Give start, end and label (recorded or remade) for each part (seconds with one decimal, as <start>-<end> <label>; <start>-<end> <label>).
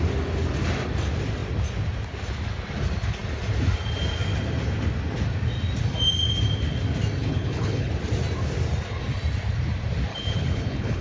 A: 0.0-7.2 recorded; 7.2-7.9 remade; 7.9-10.1 recorded; 10.1-11.0 remade